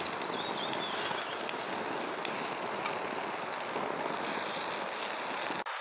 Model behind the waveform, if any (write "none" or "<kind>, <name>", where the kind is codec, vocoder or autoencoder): none